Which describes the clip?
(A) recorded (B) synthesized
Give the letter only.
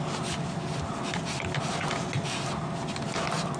A